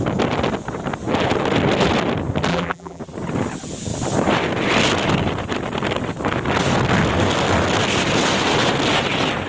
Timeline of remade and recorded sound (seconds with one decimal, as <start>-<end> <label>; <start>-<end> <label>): 0.0-2.5 recorded; 2.5-3.0 remade; 3.0-9.5 recorded